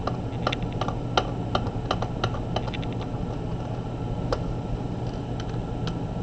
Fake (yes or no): no